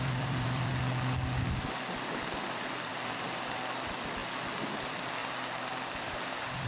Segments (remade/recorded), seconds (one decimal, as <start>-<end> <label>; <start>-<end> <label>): 0.0-0.7 remade; 0.7-2.1 recorded; 2.1-4.2 remade; 4.2-4.8 recorded; 4.8-6.7 remade